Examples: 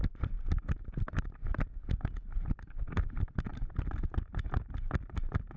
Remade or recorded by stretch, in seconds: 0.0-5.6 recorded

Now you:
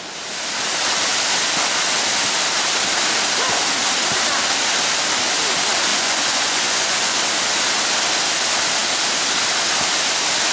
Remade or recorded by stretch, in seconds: 0.0-5.9 recorded; 5.9-7.2 remade; 7.2-10.5 recorded

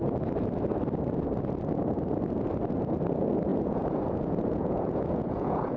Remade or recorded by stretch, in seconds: 0.0-3.5 recorded; 3.5-5.8 remade

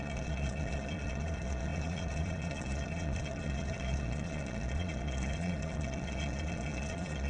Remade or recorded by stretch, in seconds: 0.0-7.3 remade

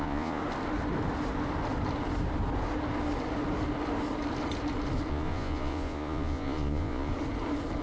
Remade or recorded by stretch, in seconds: 0.0-0.4 remade; 0.4-5.1 recorded; 5.1-7.1 remade; 7.1-7.8 recorded

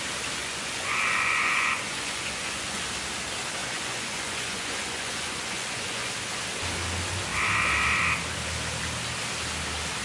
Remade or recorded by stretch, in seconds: 0.0-0.4 recorded; 0.4-2.8 remade; 2.8-3.6 recorded; 3.6-6.1 remade; 6.1-10.0 recorded

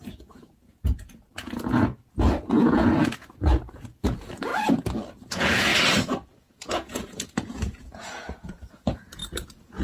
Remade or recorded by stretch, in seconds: 0.0-4.5 remade; 4.5-5.1 recorded; 5.1-5.7 remade; 5.7-6.4 recorded; 6.4-9.8 remade

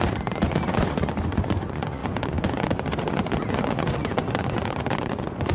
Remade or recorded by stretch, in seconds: 0.0-5.5 remade